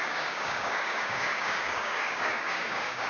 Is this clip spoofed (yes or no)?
yes